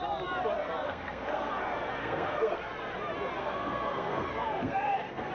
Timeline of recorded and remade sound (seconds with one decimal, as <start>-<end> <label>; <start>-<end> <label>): 0.0-0.6 recorded; 0.6-1.5 remade; 1.5-2.0 recorded; 2.0-2.6 remade; 2.6-3.4 recorded; 3.4-5.3 remade